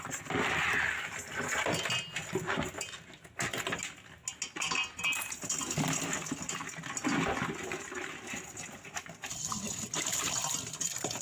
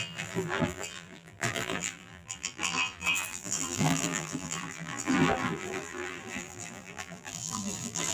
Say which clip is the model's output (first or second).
second